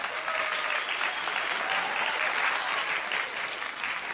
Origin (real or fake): real